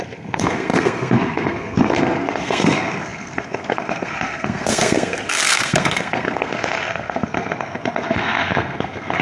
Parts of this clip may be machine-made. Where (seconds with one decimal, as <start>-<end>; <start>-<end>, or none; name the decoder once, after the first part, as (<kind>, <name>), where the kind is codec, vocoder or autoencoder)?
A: 0.0-9.2 (codec, SNAC)